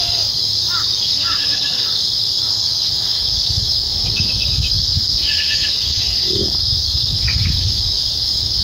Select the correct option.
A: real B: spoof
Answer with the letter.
B